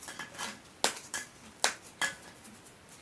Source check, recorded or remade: recorded